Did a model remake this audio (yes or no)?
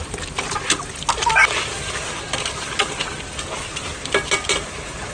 no